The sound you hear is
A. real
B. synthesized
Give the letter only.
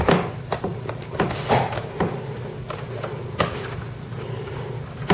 B